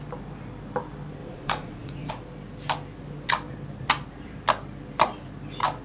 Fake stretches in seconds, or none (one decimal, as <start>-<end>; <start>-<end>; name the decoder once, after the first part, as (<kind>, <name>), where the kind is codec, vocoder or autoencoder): 1.2-2.1 (vocoder, Vocos)